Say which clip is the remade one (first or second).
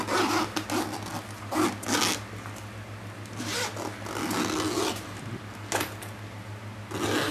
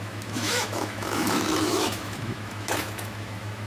second